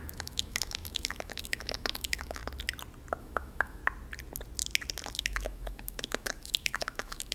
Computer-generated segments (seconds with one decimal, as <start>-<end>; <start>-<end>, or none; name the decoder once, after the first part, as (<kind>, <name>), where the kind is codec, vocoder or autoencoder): 0.0-2.4 (autoencoder, DAC-VAE); 3.2-3.8; 5.2-7.3